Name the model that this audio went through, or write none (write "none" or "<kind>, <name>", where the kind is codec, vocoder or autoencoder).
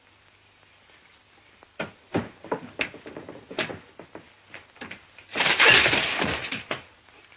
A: vocoder, BigVGAN v2